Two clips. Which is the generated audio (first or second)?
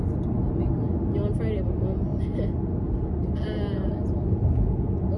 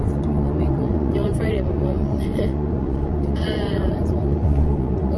second